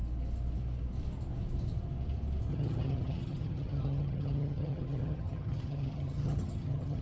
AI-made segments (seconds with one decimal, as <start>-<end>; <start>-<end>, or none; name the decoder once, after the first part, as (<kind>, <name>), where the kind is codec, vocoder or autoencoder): 2.5-7.0 (vocoder, HiFi-GAN)